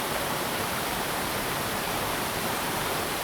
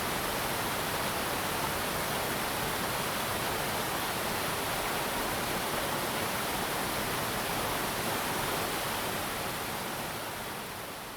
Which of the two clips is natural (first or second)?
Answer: second